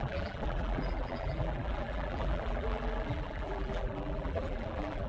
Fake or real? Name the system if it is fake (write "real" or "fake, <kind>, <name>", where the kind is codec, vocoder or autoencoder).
fake, vocoder, BigVGAN v2